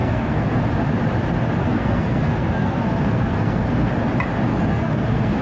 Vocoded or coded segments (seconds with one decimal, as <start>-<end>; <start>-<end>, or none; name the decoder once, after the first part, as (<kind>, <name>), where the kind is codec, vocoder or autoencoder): 0.0-0.6 (codec, SNAC); 1.6-3.9; 4.5-5.4